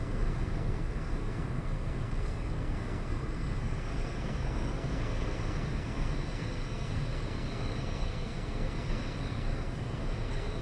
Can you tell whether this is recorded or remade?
remade